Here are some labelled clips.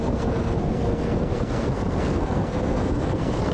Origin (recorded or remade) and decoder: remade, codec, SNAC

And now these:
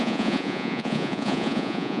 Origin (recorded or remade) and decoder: remade, vocoder, Vocos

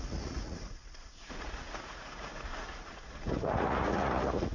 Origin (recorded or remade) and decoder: remade, vocoder, Vocos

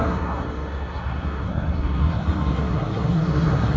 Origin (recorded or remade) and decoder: remade, codec, SNAC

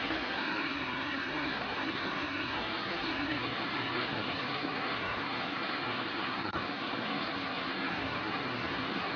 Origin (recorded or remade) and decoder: remade, codec, SNAC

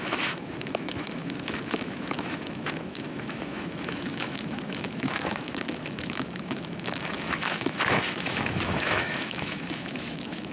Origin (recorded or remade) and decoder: remade, autoencoder, DAC-VAE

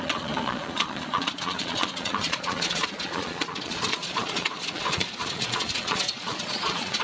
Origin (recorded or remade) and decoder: remade, vocoder, Vocos